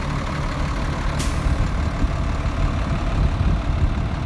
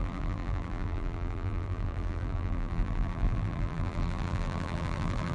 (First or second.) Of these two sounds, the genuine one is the first